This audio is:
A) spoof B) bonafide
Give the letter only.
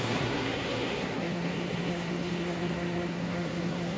A